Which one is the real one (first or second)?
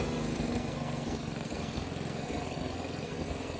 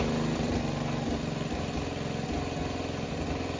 second